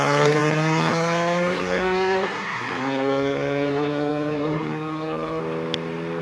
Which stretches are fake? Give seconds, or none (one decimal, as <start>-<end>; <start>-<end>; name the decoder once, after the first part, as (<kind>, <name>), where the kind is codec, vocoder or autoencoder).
0.0-5.4 (codec, SNAC)